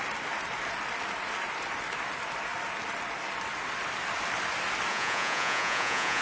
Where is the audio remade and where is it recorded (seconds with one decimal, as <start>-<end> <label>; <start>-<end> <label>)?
0.0-4.9 recorded; 4.9-6.2 remade